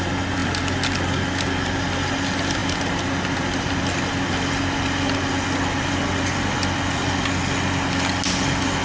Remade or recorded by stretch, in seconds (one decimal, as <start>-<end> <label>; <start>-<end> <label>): 0.0-8.8 recorded